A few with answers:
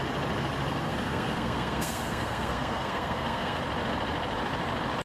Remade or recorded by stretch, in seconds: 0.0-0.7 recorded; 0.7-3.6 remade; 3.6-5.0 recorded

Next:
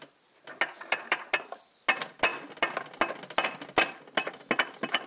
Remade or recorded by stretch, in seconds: 0.0-5.1 recorded

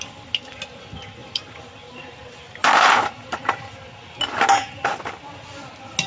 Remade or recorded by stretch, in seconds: 0.0-1.2 recorded; 1.2-3.7 remade; 3.7-6.1 recorded

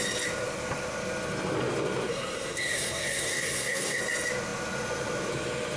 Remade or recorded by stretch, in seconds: 0.0-2.1 recorded; 2.1-4.0 remade; 4.0-5.8 recorded

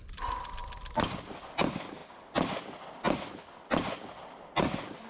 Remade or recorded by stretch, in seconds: 0.0-5.1 recorded

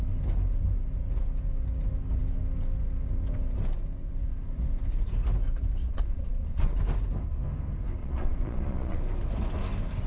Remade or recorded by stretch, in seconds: 0.0-5.9 recorded; 5.9-6.8 remade; 6.8-8.0 recorded; 8.0-9.0 remade; 9.0-10.1 recorded

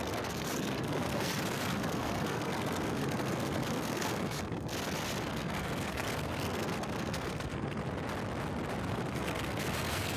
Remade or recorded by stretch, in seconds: 0.0-4.7 remade; 4.7-5.3 recorded; 5.3-7.8 remade; 7.8-8.9 recorded; 8.9-10.2 remade

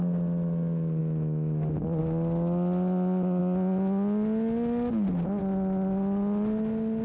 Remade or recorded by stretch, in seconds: 0.0-7.0 recorded